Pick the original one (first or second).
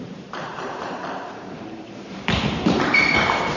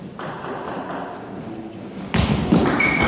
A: second